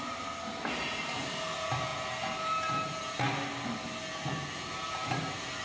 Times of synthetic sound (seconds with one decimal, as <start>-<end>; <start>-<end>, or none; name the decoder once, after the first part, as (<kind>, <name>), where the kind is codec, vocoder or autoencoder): none